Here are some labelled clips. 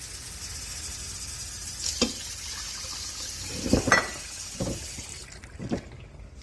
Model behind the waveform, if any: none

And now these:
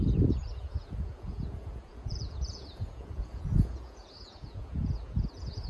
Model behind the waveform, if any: vocoder, Vocos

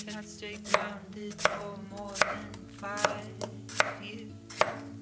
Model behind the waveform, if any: none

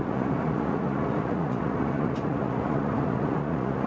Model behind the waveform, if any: vocoder, Vocos